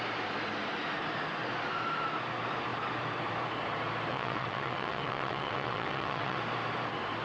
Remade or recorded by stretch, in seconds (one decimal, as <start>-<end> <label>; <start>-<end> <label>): 0.0-4.1 recorded; 4.1-6.4 remade; 6.4-7.2 recorded